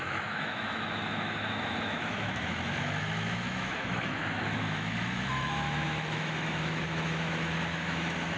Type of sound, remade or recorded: remade